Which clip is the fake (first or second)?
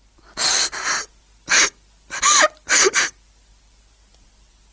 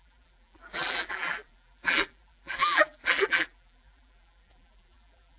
second